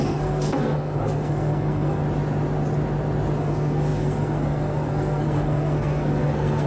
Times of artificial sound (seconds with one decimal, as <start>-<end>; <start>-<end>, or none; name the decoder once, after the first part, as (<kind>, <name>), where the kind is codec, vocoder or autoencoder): 0.0-2.0 (codec, SNAC); 3.4-6.7

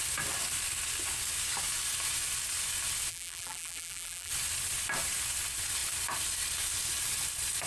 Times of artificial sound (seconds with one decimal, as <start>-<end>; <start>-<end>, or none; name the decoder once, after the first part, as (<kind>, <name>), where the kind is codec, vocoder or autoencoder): 3.1-4.3 (vocoder, BigVGAN v2)

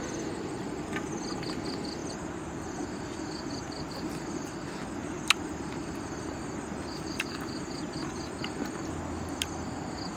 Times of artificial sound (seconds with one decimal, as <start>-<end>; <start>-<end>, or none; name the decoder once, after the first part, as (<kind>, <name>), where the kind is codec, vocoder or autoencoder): 2.0-3.0 (vocoder, BigVGAN v2)